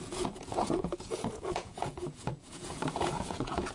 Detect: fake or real fake